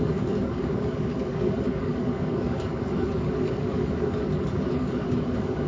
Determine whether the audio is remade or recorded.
remade